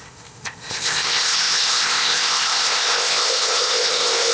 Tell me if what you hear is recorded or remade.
remade